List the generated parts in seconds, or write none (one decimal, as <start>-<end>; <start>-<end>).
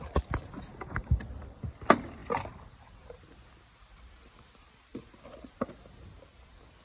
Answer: 0.7-1.2